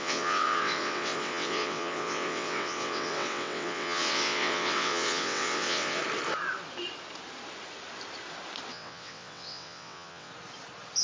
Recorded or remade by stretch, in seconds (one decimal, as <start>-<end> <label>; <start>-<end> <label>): 0.0-6.0 remade; 6.0-8.7 recorded; 8.7-10.3 remade; 10.3-11.0 recorded